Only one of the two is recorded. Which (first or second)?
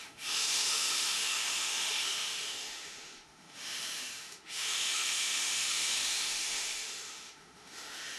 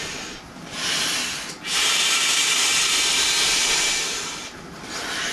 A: second